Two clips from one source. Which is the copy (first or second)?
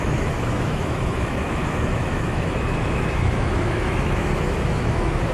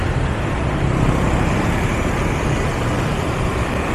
first